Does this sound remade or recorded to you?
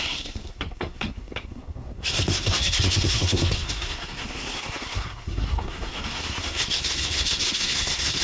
remade